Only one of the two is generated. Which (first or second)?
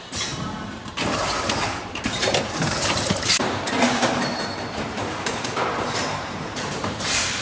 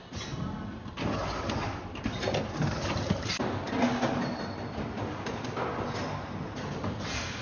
first